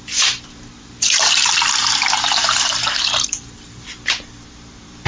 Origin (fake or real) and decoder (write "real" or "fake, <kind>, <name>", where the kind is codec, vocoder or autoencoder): fake, vocoder, BigVGAN v2